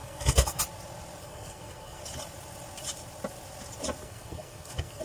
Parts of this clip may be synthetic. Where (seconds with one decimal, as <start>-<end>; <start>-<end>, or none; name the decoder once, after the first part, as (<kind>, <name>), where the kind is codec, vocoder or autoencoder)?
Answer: 0.0-0.6 (codec, SNAC); 1.2-2.0; 4.0-5.0